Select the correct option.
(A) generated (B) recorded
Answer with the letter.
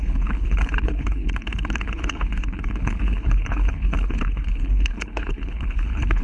A